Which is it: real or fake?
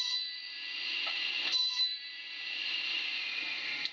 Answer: real